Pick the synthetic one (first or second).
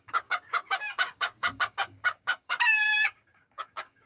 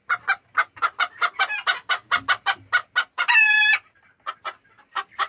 first